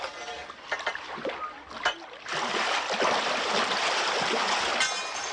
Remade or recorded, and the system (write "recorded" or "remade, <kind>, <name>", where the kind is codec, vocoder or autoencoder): recorded